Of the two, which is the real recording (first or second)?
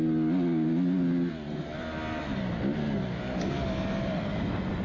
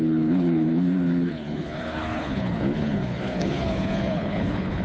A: first